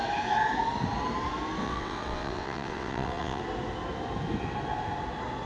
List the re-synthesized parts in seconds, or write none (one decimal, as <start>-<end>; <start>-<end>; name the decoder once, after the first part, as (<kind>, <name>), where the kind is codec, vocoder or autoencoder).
1.6-3.4 (vocoder, WaveNeXt)